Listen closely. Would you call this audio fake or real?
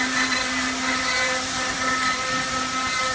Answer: fake